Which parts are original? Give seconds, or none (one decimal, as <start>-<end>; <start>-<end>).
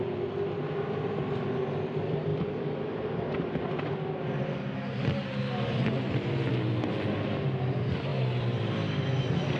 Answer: 0.0-8.1